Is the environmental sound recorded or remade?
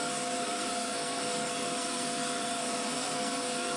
remade